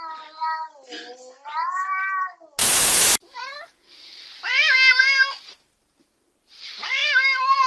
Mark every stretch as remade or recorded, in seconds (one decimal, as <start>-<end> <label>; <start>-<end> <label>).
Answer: 0.0-2.6 recorded; 2.6-3.4 remade; 3.4-7.0 recorded; 7.0-7.7 remade

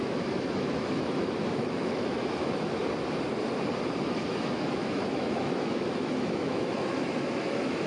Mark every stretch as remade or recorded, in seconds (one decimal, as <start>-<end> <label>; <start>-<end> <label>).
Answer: 0.0-2.8 remade; 2.8-4.1 recorded; 4.1-7.9 remade

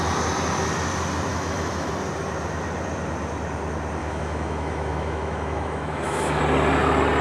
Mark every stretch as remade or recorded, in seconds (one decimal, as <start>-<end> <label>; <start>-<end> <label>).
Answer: 0.0-1.3 recorded; 1.3-1.9 remade; 1.9-4.0 recorded; 4.0-6.4 remade; 6.4-7.2 recorded

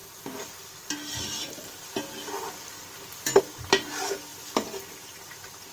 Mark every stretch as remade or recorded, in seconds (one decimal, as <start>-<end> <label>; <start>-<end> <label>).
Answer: 0.0-5.7 recorded

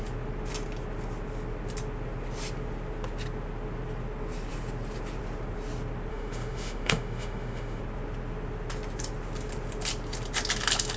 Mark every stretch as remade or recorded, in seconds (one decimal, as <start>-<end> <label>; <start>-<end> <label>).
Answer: 0.0-6.1 recorded; 6.1-7.8 remade; 7.8-11.0 recorded

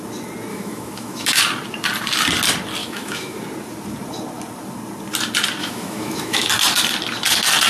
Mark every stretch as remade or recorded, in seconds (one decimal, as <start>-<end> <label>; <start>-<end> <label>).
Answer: 0.0-0.5 recorded; 0.5-1.4 remade; 1.4-2.8 recorded; 2.8-3.4 remade; 3.4-5.6 recorded; 5.6-6.5 remade; 6.5-7.7 recorded